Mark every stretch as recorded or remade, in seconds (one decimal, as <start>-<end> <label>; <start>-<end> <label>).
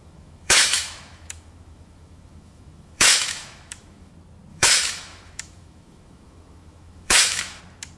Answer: 0.0-4.1 remade; 4.1-4.5 recorded; 4.5-7.6 remade; 7.6-8.0 recorded